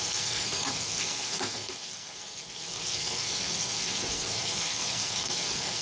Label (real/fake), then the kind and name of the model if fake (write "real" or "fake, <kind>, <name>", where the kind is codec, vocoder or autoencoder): fake, codec, SNAC